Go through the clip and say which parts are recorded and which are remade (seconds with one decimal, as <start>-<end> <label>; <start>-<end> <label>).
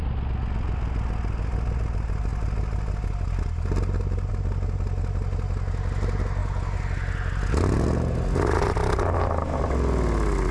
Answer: 0.0-10.5 recorded